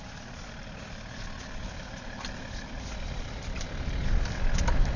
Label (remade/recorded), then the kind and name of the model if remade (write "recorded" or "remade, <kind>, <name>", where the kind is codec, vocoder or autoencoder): recorded